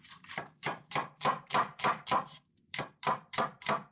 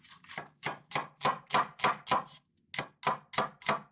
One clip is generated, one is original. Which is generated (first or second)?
first